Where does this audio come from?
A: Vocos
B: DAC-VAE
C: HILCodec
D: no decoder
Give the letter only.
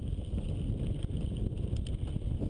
D